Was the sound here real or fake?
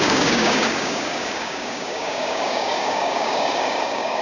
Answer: fake